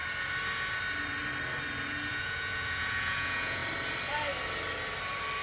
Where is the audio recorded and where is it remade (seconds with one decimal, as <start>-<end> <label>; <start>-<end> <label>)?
0.0-2.1 recorded; 2.1-3.6 remade; 3.6-5.4 recorded